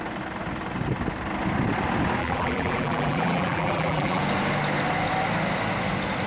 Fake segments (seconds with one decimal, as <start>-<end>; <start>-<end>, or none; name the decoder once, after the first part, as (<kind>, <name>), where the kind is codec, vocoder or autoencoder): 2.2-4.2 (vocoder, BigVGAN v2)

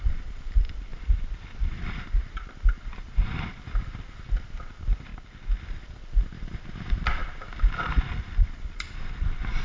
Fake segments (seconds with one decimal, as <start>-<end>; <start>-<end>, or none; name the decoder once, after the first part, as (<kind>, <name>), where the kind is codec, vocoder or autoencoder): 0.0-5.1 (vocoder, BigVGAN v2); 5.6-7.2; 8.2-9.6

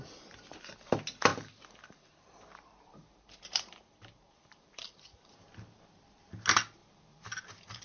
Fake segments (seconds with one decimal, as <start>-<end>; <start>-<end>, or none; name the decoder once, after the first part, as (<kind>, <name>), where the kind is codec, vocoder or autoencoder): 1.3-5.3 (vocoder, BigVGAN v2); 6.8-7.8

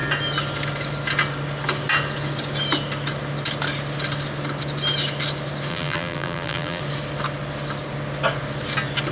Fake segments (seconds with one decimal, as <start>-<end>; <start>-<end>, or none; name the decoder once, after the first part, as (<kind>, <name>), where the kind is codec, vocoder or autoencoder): 5.7-6.8 (vocoder, BigVGAN v2)